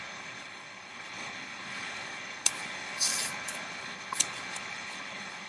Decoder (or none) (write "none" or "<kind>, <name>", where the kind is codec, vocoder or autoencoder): codec, HILCodec